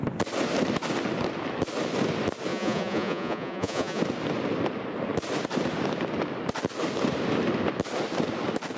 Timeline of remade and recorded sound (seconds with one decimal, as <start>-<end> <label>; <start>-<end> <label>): 0.0-2.5 recorded; 2.5-4.0 remade; 4.0-8.8 recorded